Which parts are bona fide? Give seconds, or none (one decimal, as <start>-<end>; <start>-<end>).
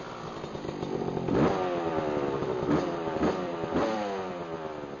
0.0-2.4; 4.3-5.0